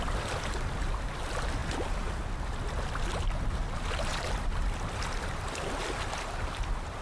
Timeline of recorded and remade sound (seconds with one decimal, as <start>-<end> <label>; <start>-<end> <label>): 0.0-7.0 recorded